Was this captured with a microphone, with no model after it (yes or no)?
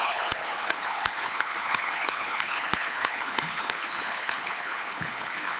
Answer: no